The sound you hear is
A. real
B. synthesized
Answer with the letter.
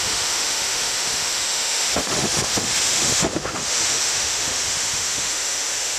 B